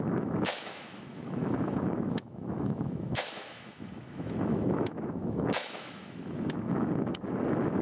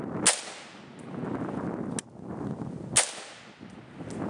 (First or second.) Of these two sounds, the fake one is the first